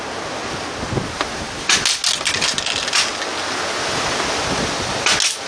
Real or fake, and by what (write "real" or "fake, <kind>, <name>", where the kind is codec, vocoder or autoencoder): real